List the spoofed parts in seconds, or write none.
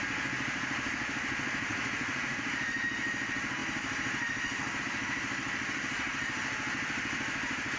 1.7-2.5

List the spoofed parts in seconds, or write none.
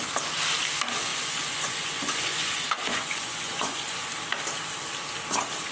1.1-4.1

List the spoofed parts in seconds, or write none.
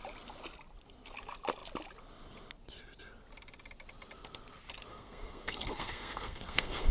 4.9-6.9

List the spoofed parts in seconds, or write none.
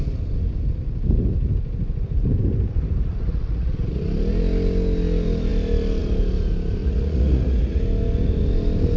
3.1-4.0; 6.8-7.8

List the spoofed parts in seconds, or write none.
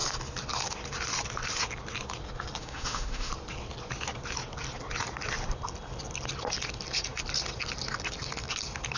2.6-3.3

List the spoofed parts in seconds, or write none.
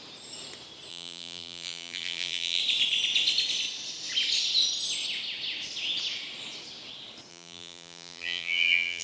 0.9-2.6; 7.3-9.0